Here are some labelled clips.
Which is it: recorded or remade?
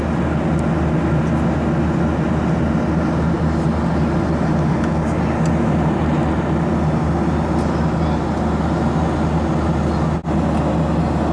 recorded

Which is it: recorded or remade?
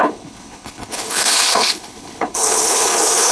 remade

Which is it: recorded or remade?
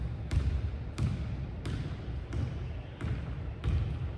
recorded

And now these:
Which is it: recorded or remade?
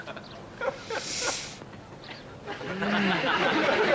recorded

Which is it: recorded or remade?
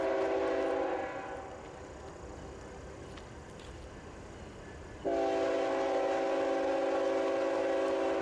recorded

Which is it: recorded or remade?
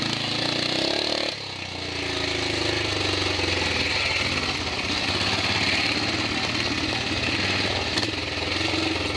recorded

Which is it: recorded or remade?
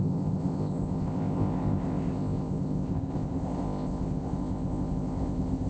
remade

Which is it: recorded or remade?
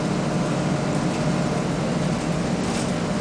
recorded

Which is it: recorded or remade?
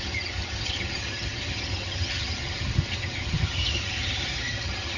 remade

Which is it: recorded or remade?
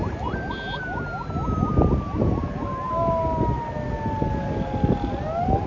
recorded